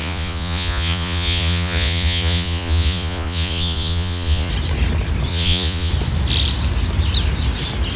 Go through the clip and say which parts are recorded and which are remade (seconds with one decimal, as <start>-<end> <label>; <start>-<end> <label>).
0.0-4.5 remade; 4.5-5.3 recorded; 5.3-5.9 remade; 5.9-8.0 recorded